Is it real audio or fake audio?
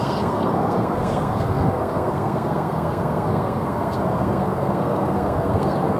fake